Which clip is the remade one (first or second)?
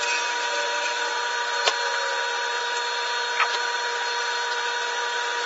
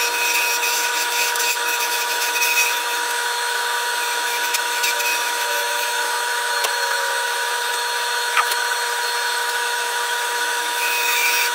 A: second